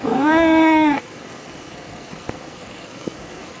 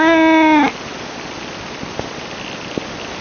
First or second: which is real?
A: second